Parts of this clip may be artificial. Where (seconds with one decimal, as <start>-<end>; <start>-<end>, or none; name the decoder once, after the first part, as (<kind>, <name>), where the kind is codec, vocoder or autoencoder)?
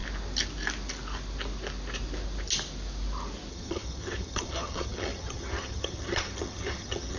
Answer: 3.5-7.2 (vocoder, HiFi-GAN)